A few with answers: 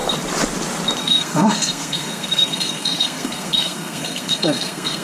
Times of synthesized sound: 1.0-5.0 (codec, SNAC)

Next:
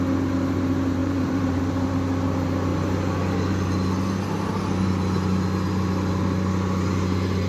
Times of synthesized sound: 1.0-1.6 (vocoder, BigVGAN v2)